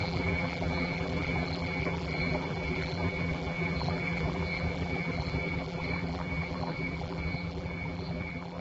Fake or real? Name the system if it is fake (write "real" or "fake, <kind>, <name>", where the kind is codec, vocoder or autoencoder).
fake, vocoder, BigVGAN v2